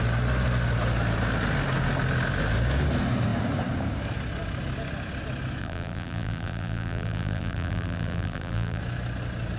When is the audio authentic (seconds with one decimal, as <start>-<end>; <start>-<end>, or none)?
0.0-5.6; 8.8-9.6

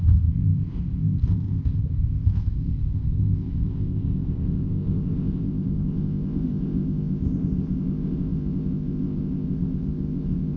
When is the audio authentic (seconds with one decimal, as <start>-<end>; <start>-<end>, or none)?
none